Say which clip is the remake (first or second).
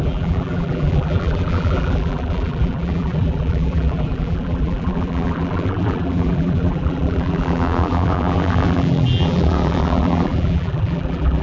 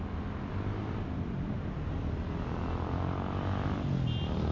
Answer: first